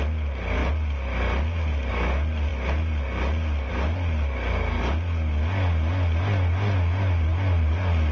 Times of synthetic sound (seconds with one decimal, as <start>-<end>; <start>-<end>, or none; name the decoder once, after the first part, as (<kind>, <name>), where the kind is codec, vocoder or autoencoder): none